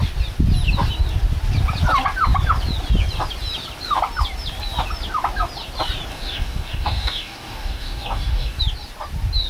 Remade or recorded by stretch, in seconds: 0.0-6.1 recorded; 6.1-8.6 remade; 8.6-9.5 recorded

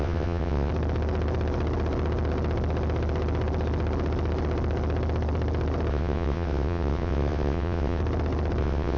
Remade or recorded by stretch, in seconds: 0.0-0.7 remade; 0.7-5.9 recorded; 5.9-8.0 remade; 8.0-8.6 recorded; 8.6-9.0 remade